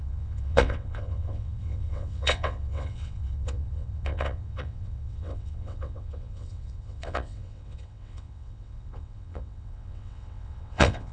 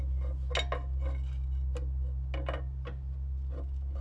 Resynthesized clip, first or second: first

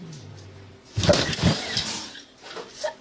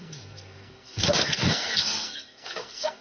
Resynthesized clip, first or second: second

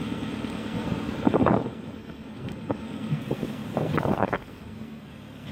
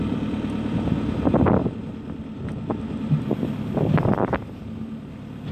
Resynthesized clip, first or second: first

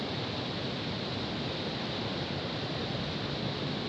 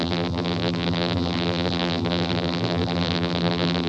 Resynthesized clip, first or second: second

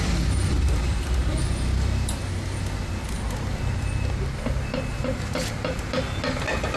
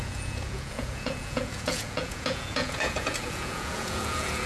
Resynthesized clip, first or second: second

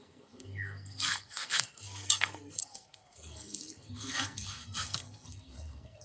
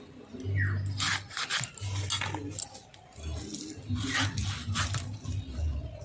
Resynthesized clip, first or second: first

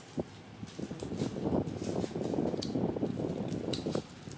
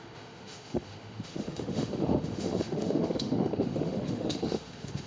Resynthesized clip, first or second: second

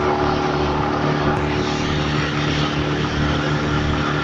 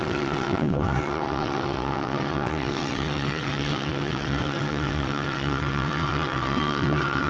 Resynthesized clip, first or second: second